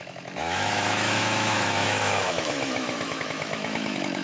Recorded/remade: remade